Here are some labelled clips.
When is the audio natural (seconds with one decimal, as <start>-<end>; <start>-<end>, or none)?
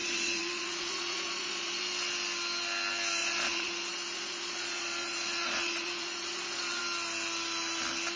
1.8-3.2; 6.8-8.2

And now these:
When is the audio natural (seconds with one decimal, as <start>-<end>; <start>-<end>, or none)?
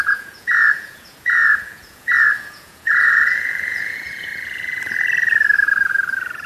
4.3-6.5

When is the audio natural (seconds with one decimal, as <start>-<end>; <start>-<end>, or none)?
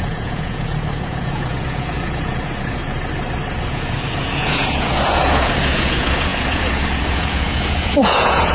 2.8-3.7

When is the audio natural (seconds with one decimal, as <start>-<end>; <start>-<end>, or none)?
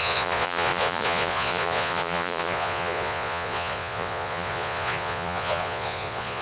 none